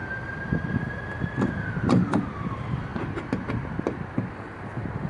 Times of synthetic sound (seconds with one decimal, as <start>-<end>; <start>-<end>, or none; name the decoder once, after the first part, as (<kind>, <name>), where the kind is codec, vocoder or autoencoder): 0.0-2.9 (vocoder, BigVGAN v2); 4.3-5.1